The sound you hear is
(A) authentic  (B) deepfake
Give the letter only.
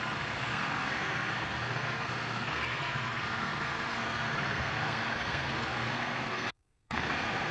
B